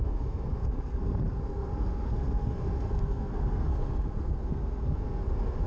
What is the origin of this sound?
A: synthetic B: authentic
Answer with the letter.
A